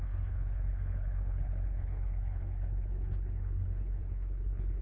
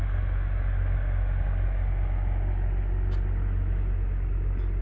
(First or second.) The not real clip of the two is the first